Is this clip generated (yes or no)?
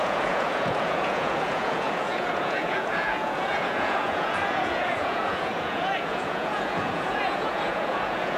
yes